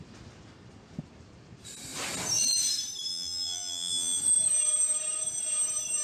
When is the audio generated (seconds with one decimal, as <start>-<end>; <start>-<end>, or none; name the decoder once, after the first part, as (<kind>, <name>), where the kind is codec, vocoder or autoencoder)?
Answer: 3.1-4.2 (vocoder, BigVGAN v2)